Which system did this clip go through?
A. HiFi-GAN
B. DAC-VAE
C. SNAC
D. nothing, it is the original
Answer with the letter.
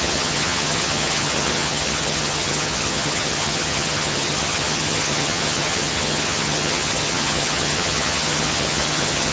A